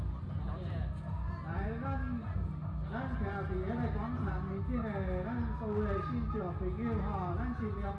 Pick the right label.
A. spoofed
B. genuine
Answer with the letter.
B